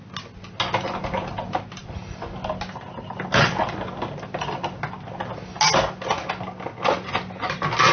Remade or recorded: recorded